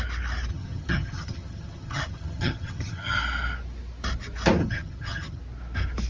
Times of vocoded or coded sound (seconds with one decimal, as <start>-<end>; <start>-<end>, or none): 0.5-3.2; 4.6-5.4